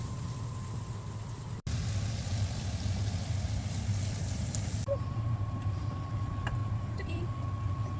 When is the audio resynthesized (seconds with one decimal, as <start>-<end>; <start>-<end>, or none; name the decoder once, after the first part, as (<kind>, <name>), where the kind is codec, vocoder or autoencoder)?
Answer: 4.2-5.9 (vocoder, BigVGAN v2); 6.6-7.2